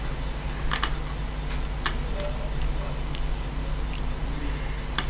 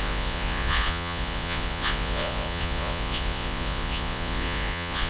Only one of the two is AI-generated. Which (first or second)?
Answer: second